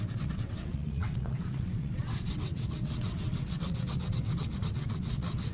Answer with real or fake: fake